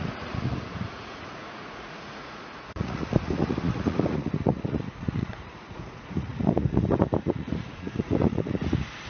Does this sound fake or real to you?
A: fake